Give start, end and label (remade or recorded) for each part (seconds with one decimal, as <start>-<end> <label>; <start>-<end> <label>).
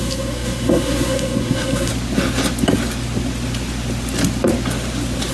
0.0-1.9 remade; 1.9-5.3 recorded